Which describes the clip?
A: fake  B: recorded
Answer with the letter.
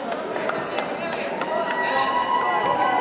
B